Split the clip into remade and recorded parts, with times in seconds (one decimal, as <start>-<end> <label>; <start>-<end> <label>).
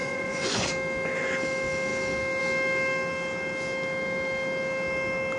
0.0-0.7 remade; 0.7-5.4 recorded